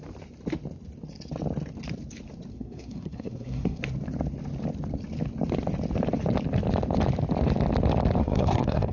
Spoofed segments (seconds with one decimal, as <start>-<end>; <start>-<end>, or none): 2.5-3.8; 8.2-8.9